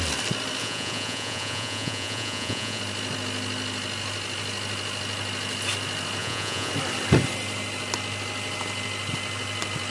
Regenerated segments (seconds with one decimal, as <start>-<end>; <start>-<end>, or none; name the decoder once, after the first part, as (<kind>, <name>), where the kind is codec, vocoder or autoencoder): 0.6-2.8 (vocoder, Vocos); 6.2-6.7